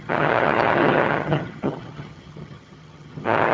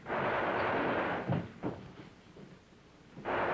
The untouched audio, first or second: second